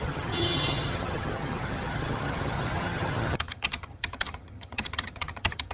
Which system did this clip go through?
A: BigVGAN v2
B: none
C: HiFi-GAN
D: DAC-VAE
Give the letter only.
C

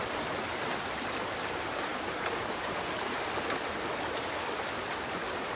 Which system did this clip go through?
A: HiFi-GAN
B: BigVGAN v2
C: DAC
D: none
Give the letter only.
D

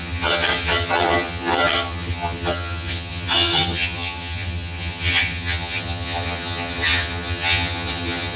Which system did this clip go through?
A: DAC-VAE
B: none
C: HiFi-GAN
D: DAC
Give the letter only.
C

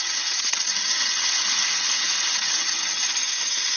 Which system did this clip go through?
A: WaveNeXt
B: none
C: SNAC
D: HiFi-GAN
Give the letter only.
D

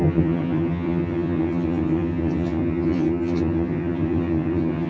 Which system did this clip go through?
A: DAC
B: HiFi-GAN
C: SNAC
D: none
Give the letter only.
B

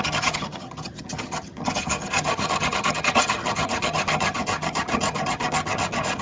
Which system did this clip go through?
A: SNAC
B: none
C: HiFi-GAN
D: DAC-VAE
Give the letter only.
C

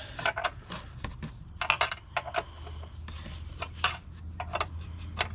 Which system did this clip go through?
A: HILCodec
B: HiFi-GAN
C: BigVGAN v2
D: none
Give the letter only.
D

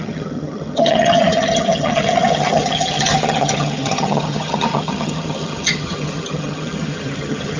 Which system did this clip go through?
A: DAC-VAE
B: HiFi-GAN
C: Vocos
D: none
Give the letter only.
B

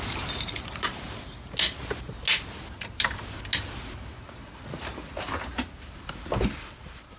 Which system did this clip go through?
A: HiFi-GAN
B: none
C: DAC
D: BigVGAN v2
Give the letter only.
B